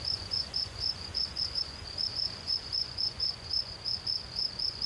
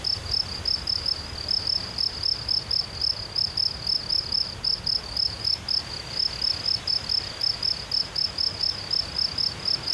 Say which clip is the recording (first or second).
second